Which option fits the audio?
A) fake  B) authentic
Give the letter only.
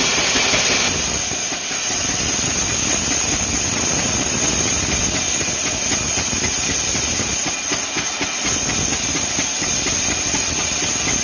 B